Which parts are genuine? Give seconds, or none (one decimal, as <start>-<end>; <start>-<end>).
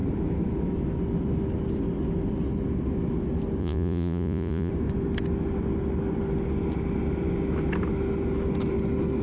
0.0-3.6; 4.7-9.2